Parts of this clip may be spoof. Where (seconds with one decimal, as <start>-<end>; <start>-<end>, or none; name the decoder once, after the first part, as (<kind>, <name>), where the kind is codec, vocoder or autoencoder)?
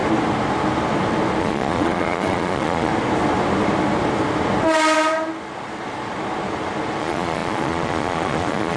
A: 1.4-2.9 (vocoder, Vocos); 7.0-8.8